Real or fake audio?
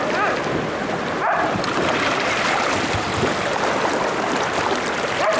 real